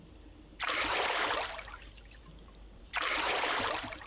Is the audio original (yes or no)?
no